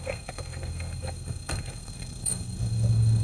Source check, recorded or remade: remade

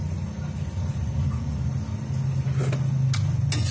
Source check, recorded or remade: recorded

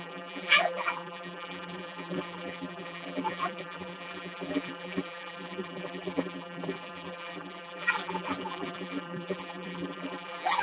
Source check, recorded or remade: remade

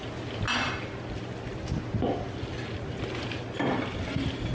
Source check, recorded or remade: recorded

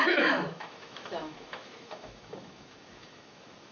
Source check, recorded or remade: remade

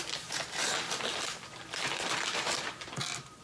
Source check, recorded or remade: remade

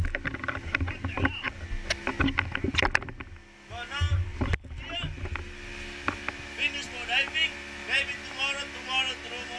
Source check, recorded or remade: recorded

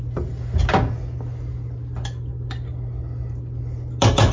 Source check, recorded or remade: recorded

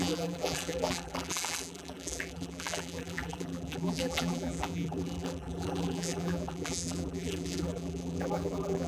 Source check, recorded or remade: remade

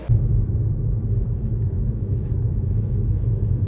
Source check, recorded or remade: remade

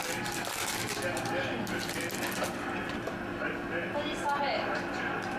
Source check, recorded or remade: recorded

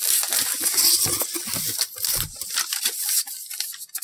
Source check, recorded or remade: recorded